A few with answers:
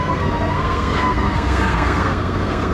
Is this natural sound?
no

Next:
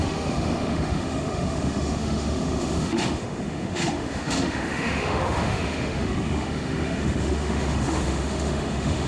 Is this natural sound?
no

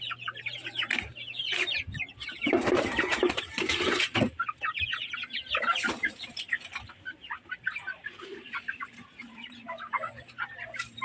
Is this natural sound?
no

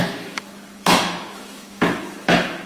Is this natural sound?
no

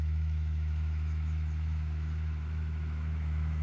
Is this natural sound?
no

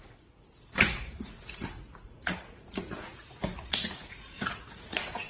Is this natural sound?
no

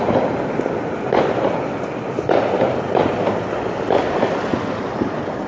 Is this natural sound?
yes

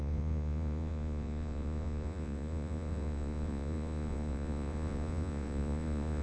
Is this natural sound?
no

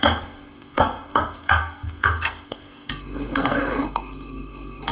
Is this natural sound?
no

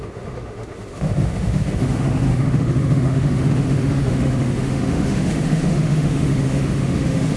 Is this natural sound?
no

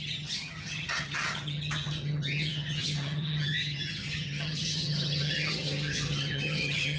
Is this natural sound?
no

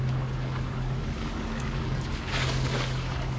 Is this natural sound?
no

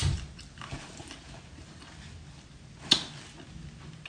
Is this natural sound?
yes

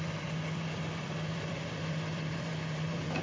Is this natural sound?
no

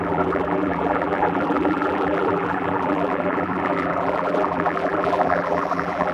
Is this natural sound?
no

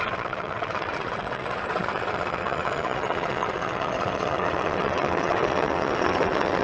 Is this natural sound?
no